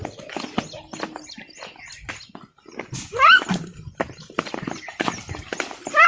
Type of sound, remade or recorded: recorded